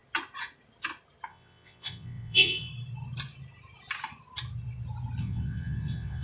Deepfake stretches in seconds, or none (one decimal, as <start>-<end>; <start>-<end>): 1.3-2.7; 5.2-6.2

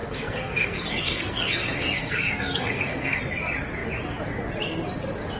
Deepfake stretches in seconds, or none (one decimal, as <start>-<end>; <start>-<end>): 0.0-3.2

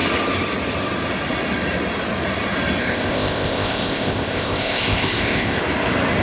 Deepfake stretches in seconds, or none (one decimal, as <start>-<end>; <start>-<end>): 2.8-5.6